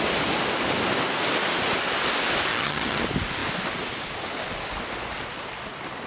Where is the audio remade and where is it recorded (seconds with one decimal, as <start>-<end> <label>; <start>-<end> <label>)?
0.0-2.5 recorded; 2.5-3.0 remade; 3.0-6.1 recorded

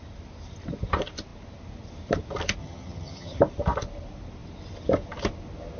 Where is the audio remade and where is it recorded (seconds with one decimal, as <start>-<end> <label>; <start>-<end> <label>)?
0.0-2.6 recorded; 2.6-3.4 remade; 3.4-5.8 recorded